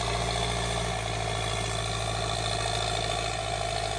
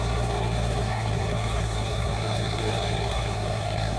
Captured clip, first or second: first